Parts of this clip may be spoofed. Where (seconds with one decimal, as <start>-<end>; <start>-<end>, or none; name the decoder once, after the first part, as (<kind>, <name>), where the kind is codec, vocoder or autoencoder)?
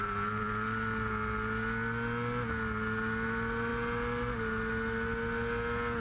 none